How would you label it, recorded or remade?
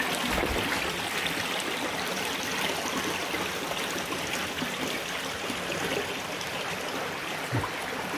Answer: recorded